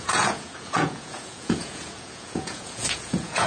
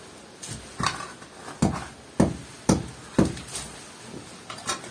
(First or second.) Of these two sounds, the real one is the second